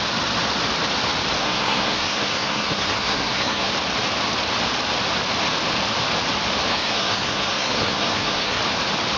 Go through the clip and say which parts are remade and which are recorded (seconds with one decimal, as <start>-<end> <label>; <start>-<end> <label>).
0.0-1.4 recorded; 1.4-3.7 remade; 3.7-6.7 recorded; 6.7-8.6 remade; 8.6-9.2 recorded